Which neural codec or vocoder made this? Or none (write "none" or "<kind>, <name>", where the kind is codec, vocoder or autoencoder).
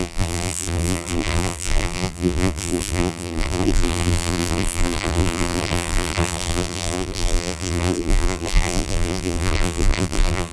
vocoder, BigVGAN v2